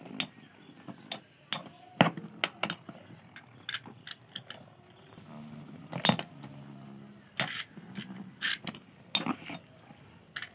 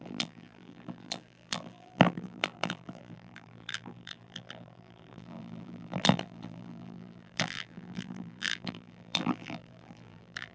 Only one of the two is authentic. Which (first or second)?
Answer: first